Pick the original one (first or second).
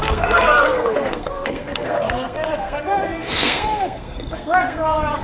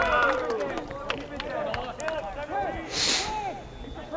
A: second